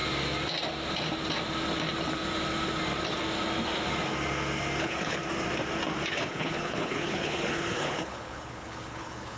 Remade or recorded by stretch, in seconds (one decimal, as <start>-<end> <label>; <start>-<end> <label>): 0.0-4.8 recorded; 4.8-5.2 remade; 5.2-6.1 recorded; 6.1-9.4 remade